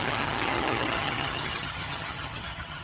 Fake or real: fake